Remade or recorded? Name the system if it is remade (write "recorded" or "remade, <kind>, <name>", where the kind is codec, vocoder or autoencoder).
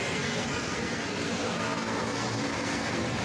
remade, codec, SNAC